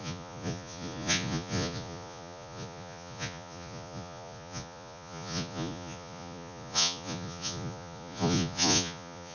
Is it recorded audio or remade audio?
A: remade